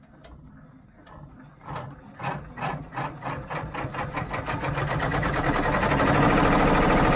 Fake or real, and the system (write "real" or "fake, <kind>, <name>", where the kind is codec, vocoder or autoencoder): real